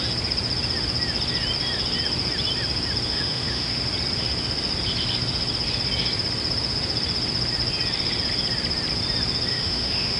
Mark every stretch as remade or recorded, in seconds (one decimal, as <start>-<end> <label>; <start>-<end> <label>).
0.0-3.1 recorded; 3.1-3.8 remade; 3.8-9.5 recorded; 9.5-10.2 remade